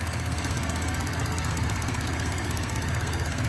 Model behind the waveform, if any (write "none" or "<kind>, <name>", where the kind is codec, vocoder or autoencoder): codec, SNAC